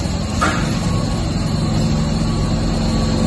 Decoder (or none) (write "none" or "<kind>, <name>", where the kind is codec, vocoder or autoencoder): none